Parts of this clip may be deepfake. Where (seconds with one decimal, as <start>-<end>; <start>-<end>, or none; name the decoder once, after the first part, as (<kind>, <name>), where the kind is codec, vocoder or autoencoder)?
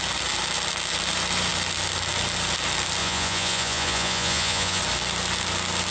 3.0-4.8 (vocoder, Vocos)